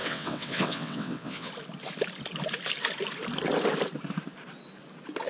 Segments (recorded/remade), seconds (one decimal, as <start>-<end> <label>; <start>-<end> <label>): 0.0-1.5 remade; 1.5-5.3 recorded